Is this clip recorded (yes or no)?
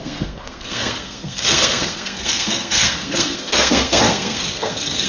no